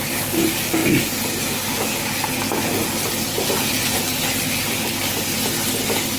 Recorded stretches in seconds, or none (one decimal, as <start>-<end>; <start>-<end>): 0.0-6.2